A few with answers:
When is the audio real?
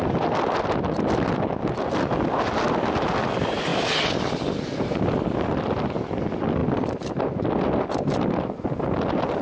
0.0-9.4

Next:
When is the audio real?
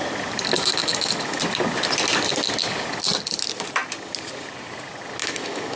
0.0-0.8; 1.4-5.2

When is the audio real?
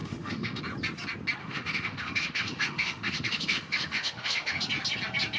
0.6-1.4; 4.6-5.4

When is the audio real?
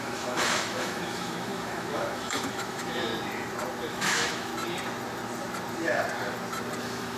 3.1-3.9; 4.5-6.8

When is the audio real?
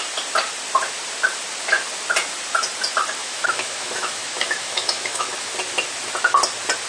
0.0-3.2; 5.5-6.9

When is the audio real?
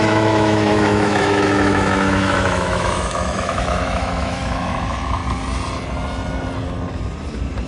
5.2-7.7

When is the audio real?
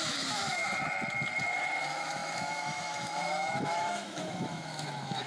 0.6-1.8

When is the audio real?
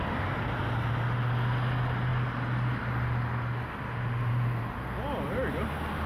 0.0-6.1